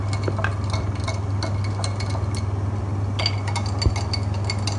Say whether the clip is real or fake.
real